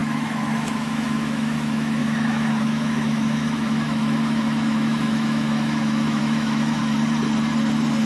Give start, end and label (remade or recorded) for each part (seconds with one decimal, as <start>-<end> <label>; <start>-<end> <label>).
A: 0.0-6.8 remade; 6.8-8.1 recorded

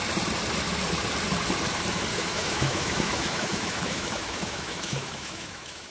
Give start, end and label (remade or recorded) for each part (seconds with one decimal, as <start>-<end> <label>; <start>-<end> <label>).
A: 0.0-2.1 recorded; 2.1-5.9 remade

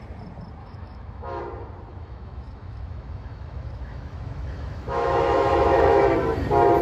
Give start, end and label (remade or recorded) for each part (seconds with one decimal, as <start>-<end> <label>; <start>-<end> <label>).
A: 0.0-0.6 recorded; 0.6-1.4 remade; 1.4-1.9 recorded; 1.9-6.0 remade; 6.0-6.8 recorded

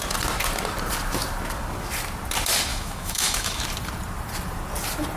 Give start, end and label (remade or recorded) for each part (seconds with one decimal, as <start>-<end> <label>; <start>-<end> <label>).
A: 0.0-2.7 recorded; 2.7-3.6 remade; 3.6-5.2 recorded

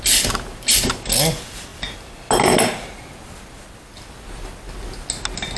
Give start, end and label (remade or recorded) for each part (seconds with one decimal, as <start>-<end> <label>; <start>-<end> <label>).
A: 0.0-5.6 recorded

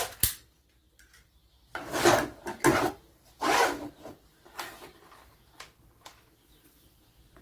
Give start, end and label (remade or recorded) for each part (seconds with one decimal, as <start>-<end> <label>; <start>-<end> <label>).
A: 0.0-7.4 recorded

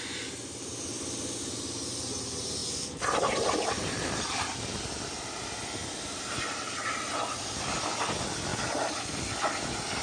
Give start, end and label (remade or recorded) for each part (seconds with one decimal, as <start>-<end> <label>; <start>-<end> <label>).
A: 0.0-10.0 recorded

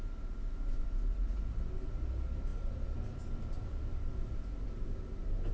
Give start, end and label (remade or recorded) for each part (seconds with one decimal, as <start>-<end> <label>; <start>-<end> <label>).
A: 0.0-5.5 recorded